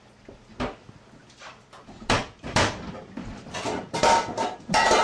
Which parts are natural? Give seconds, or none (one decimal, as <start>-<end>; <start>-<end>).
0.0-1.2; 3.8-5.0